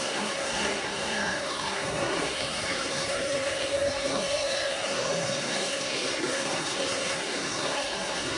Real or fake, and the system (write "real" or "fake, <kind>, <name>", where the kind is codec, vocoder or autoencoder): fake, codec, SNAC